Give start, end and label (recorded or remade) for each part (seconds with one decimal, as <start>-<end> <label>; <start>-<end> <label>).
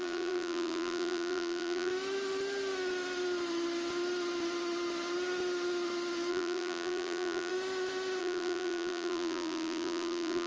0.0-1.9 remade; 1.9-6.3 recorded; 6.3-7.5 remade; 7.5-8.2 recorded; 8.2-10.5 remade